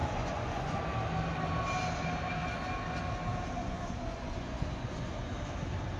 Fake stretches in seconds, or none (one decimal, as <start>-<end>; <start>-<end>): 0.0-0.8; 3.6-5.3

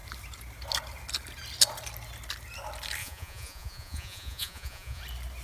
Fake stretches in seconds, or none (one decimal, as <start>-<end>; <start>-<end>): 3.0-5.0